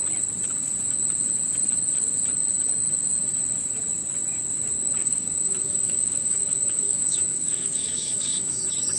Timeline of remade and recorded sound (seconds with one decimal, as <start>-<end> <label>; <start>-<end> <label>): 0.0-5.0 recorded; 5.0-8.6 remade; 8.6-9.0 recorded